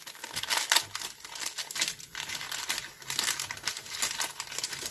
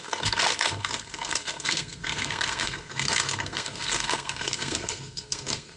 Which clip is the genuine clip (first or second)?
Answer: first